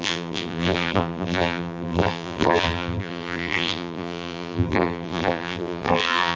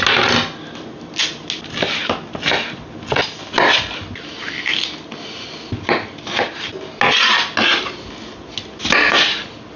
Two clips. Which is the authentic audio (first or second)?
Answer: second